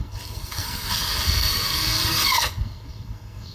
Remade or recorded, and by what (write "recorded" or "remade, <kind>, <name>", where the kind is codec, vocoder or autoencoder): remade, codec, SNAC